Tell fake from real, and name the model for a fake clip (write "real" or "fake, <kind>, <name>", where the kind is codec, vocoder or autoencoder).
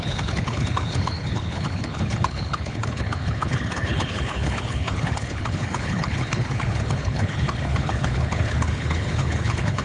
fake, codec, HILCodec